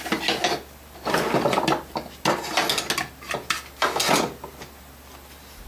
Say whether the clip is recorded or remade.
recorded